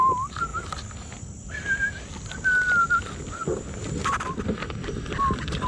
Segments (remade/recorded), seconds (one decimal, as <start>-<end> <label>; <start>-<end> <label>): 0.0-5.7 recorded